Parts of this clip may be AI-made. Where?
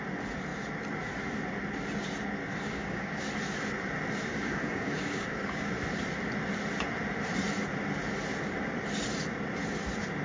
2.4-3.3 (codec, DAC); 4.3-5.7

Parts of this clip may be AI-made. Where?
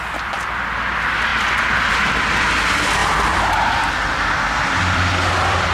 0.0-3.0 (vocoder, BigVGAN v2); 4.8-5.7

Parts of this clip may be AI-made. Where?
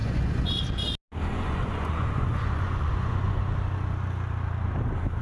0.0-0.5 (vocoder, Vocos); 1.3-3.4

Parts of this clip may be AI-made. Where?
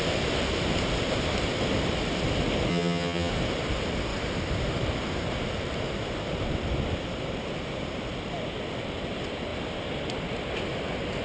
2.7-3.3 (vocoder, HiFi-GAN)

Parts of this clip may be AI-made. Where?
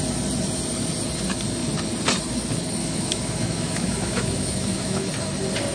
2.8-5.1 (autoencoder, DAC-VAE)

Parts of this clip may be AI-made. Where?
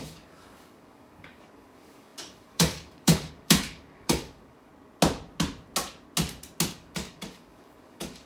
0.0-4.7 (codec, DAC); 6.7-8.2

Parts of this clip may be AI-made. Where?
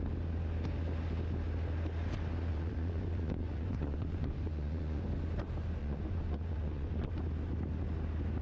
2.5-5.0 (vocoder, Vocos); 5.8-7.1